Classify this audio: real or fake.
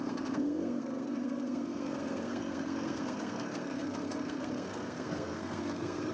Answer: fake